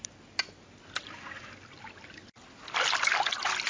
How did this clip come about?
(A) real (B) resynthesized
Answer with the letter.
A